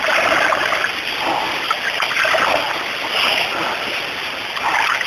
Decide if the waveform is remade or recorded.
recorded